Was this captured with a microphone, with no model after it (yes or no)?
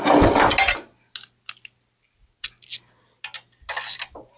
yes